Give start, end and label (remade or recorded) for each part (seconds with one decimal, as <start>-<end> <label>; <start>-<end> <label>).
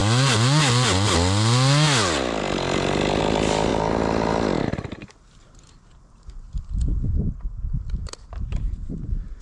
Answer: 0.0-9.4 recorded